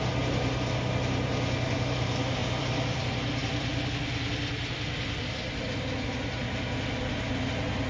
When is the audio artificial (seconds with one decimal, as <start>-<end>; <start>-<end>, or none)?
2.4-3.0; 3.4-5.6